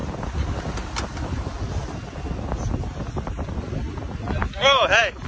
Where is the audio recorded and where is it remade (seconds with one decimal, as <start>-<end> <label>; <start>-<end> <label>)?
0.0-5.3 recorded